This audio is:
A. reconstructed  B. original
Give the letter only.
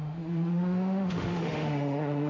A